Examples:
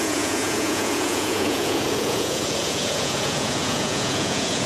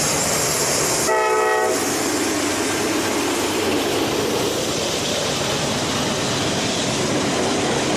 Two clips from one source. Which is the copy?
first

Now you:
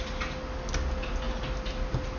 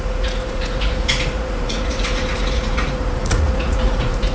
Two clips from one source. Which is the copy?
second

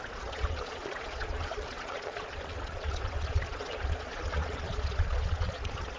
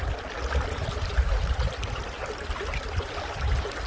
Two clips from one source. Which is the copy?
first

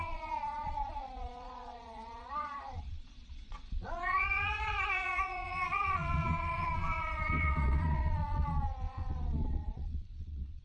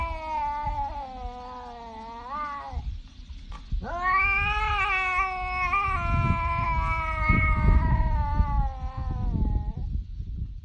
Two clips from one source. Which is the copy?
first